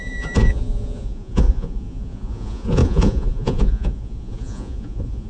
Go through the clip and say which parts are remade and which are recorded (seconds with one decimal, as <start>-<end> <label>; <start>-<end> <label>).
0.0-5.3 remade